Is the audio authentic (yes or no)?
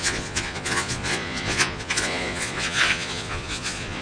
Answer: no